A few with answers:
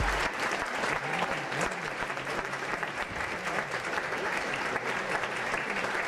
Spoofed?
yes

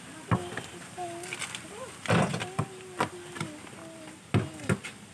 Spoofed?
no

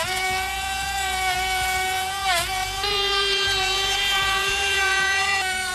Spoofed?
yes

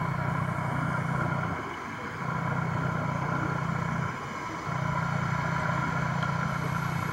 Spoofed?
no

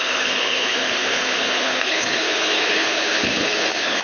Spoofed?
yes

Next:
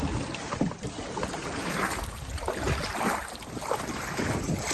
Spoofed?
no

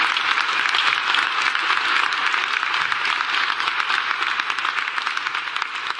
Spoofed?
no